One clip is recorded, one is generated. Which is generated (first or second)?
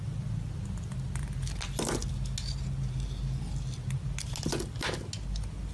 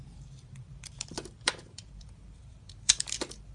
second